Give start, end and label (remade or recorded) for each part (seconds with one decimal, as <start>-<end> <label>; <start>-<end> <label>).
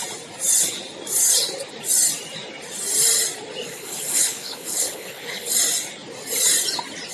0.0-3.7 recorded; 3.7-5.5 remade; 5.5-7.1 recorded